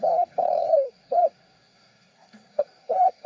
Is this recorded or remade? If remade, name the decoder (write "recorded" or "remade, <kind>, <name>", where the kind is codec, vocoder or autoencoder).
remade, codec, SNAC